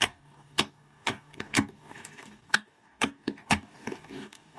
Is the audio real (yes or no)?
no